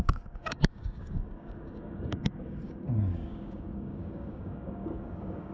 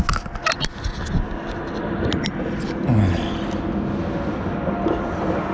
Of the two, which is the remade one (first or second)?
first